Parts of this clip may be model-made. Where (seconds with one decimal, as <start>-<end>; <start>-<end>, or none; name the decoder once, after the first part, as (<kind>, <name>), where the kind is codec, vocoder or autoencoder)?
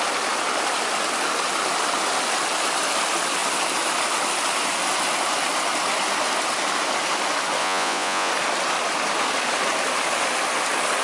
7.6-8.3 (vocoder, Vocos)